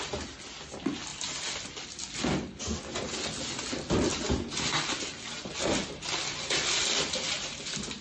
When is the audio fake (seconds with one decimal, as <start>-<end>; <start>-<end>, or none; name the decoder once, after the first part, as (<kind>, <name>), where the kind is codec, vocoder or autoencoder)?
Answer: none